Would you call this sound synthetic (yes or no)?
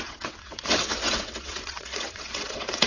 yes